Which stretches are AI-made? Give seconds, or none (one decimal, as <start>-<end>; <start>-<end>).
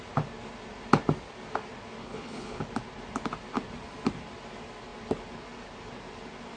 2.0-2.6